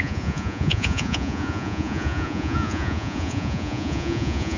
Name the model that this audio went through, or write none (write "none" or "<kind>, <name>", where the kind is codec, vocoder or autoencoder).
vocoder, Vocos